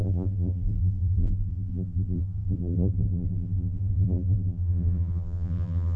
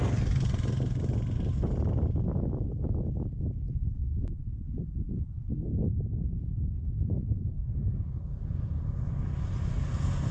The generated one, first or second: first